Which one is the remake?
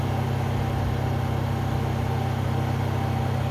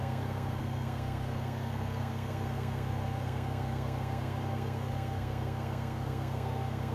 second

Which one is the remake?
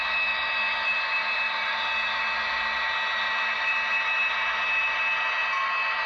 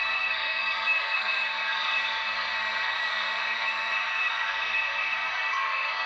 second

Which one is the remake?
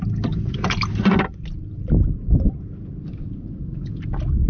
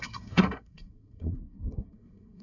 second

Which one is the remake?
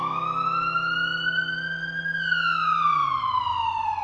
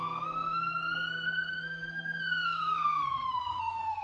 second